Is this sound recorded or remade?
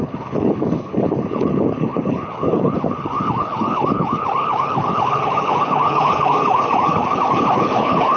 remade